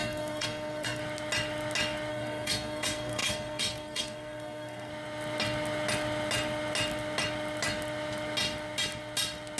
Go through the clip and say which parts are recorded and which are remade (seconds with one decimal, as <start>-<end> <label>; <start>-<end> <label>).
0.0-1.0 remade; 1.0-2.1 recorded; 2.1-4.9 remade; 4.9-9.6 recorded